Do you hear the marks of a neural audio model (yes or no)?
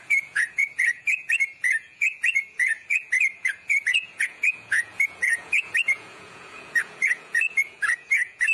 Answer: yes